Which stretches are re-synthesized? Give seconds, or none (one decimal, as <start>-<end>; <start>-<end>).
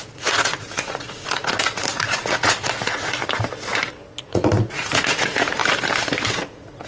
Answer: 0.0-3.2; 4.3-5.6; 6.3-6.9